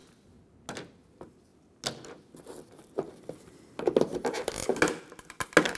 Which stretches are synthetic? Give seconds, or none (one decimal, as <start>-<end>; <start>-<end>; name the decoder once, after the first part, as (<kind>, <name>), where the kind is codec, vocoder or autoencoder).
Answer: none